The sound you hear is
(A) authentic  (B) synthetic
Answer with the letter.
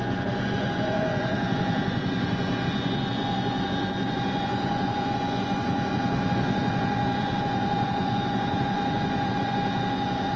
B